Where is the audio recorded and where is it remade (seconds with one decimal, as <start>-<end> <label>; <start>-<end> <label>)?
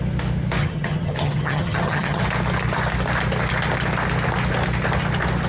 0.0-0.6 recorded; 0.6-2.2 remade; 2.2-5.5 recorded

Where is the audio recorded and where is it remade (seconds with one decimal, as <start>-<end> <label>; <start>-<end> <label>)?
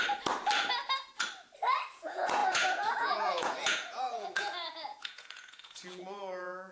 0.0-1.9 recorded; 1.9-6.7 remade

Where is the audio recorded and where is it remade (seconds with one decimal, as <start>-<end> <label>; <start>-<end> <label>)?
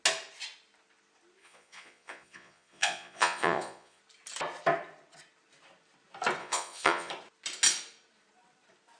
0.0-1.4 recorded; 1.4-4.0 remade; 4.0-6.4 recorded; 6.4-7.1 remade; 7.1-9.0 recorded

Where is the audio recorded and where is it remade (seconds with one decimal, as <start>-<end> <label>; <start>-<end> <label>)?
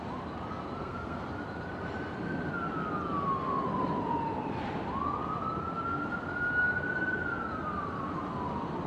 0.0-0.8 recorded; 0.8-1.3 remade; 1.3-8.9 recorded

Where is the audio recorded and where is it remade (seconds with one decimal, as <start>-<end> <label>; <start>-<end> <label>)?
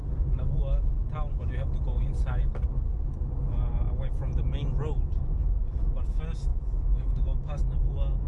0.0-0.6 remade; 0.6-6.5 recorded; 6.5-7.6 remade; 7.6-8.3 recorded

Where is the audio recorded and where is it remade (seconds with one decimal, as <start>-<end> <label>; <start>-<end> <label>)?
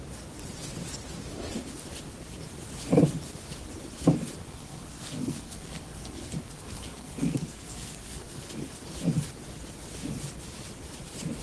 0.0-4.4 recorded; 4.4-8.5 remade; 8.5-11.4 recorded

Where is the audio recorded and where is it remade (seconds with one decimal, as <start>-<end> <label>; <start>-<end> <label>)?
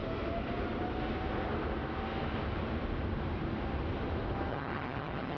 0.0-4.5 recorded; 4.5-5.4 remade